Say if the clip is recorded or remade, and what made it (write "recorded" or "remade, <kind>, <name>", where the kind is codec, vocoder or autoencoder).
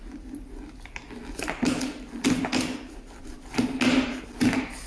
recorded